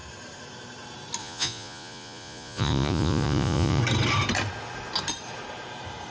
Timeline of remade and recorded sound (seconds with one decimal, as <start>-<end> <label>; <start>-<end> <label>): 0.0-1.2 recorded; 1.2-3.8 remade; 3.8-6.1 recorded